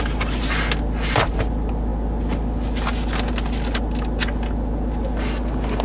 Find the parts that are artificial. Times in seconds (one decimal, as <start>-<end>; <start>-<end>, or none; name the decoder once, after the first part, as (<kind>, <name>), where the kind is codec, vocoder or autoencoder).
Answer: none